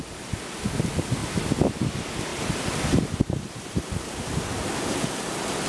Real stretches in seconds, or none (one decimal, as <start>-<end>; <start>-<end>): 0.0-1.2; 1.9-2.3; 5.0-5.7